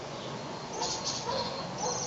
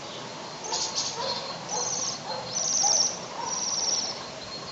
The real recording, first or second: second